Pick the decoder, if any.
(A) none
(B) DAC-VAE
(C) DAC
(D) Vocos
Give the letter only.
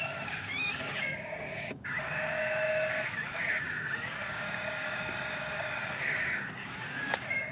C